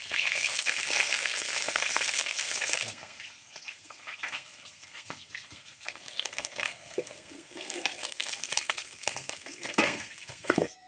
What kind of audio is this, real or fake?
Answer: fake